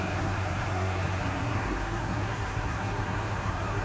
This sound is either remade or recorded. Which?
remade